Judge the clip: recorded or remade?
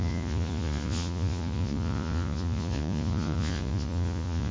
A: remade